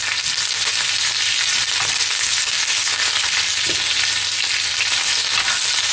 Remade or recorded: recorded